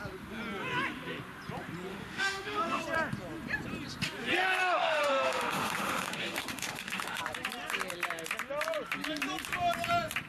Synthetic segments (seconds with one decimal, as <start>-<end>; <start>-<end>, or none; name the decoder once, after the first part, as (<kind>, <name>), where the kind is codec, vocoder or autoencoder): 1.9-2.8 (autoencoder, DAC-VAE); 4.6-7.2

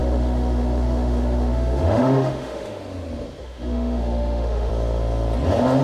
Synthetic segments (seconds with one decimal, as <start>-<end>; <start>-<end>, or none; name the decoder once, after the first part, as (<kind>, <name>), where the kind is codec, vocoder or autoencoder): 0.0-2.8 (autoencoder, DAC-VAE); 3.4-4.7

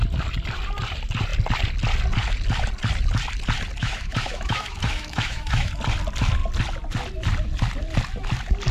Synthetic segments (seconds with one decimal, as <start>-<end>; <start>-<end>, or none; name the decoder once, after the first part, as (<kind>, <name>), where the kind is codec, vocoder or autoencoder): 3.8-5.7 (autoencoder, DAC-VAE)

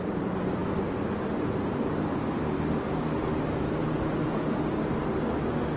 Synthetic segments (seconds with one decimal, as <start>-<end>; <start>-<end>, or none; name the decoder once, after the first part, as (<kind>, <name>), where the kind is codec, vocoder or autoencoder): none

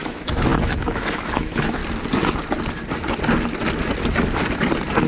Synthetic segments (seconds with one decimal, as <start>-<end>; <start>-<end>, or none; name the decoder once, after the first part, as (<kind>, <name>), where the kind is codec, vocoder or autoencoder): 0.0-1.8 (autoencoder, DAC-VAE)

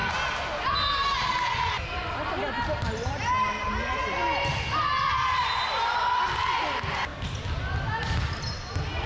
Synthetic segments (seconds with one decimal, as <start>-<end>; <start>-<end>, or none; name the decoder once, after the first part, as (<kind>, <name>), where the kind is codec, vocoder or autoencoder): none